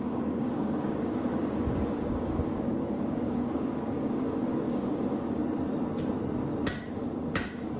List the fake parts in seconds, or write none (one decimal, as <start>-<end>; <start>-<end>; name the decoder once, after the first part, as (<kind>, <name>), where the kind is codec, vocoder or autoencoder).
0.0-5.4 (codec, DAC); 6.9-7.8

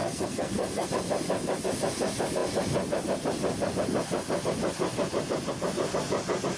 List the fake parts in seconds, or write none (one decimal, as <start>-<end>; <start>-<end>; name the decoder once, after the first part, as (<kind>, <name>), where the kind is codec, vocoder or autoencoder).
0.0-0.9 (codec, SNAC)

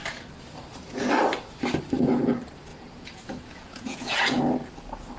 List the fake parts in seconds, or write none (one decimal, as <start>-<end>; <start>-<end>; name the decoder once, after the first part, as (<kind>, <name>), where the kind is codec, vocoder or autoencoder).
2.7-4.4 (vocoder, Vocos)

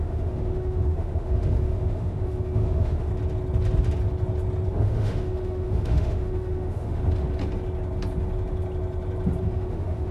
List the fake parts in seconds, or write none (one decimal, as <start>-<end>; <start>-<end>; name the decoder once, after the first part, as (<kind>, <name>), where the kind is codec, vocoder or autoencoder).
0.0-3.1 (autoencoder, DAC-VAE); 4.7-7.0; 9.4-10.1

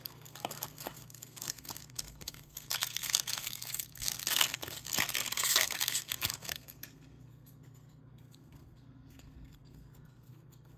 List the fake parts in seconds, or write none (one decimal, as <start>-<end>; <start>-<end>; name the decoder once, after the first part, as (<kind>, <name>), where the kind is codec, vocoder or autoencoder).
0.0-10.8 (codec, SNAC)

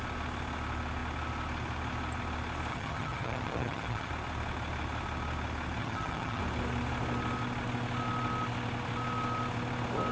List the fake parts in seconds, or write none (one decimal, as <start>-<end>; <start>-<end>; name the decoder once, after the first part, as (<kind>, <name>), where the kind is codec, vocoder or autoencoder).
2.7-4.1 (vocoder, HiFi-GAN); 5.8-6.4